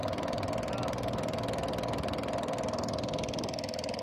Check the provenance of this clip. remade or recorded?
recorded